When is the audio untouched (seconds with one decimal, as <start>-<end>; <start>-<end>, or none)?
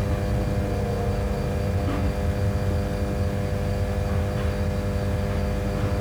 0.0-6.0